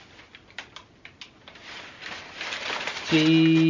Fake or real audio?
real